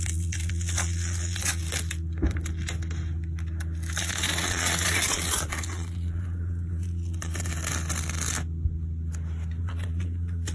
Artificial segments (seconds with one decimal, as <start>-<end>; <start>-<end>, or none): 0.0-1.6; 4.0-7.5; 9.6-10.5